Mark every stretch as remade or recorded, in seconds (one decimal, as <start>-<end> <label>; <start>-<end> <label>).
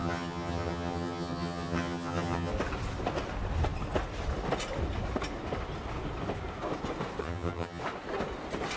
0.0-2.5 remade; 2.5-7.2 recorded; 7.2-7.8 remade; 7.8-8.8 recorded